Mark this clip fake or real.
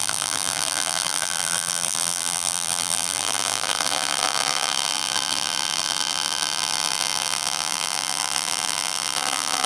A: fake